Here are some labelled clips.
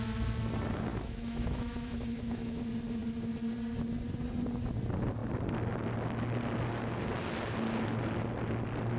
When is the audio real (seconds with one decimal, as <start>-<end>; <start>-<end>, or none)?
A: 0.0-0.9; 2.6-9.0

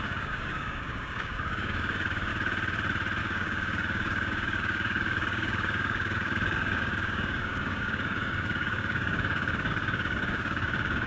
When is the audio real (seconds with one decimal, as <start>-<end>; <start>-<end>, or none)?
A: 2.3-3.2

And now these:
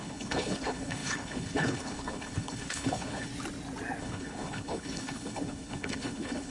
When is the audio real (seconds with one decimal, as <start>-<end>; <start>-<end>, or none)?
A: 3.3-4.0

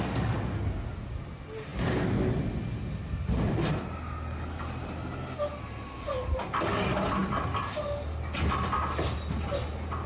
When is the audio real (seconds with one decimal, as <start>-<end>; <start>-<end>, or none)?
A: 0.0-10.1